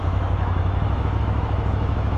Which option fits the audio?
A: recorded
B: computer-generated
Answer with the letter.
B